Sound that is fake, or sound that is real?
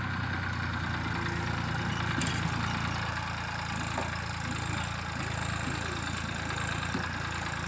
real